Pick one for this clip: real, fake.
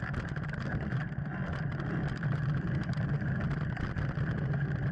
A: real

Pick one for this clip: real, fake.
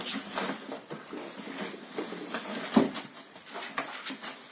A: real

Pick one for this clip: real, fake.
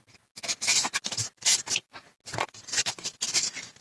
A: real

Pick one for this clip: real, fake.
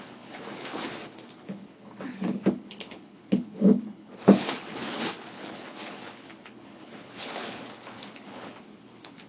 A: fake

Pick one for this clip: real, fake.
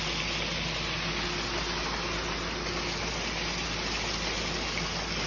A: real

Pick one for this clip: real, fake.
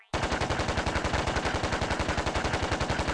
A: real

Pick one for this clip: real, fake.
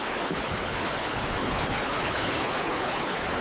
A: fake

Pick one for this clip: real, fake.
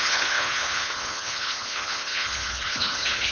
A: fake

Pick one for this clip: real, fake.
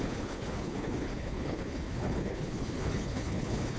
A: fake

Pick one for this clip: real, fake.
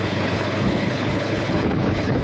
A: fake